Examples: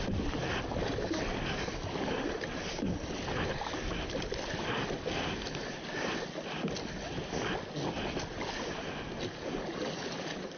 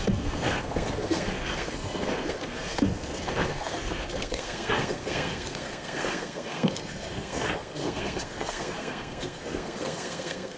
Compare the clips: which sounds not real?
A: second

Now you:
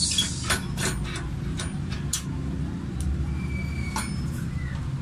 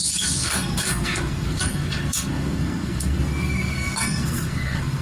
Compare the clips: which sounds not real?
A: second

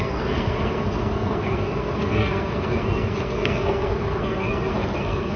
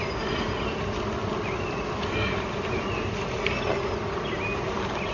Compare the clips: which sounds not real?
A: first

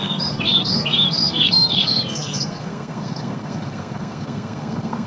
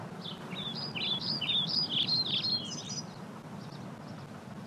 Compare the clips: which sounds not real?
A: first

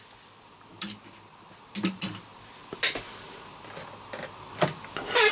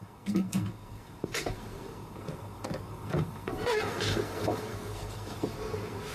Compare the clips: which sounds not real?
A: second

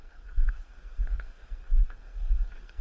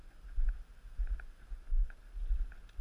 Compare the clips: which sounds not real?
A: first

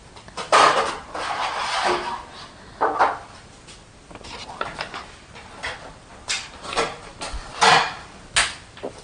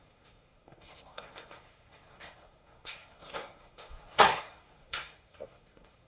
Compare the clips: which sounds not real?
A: second